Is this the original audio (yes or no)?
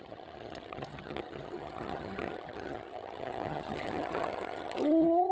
no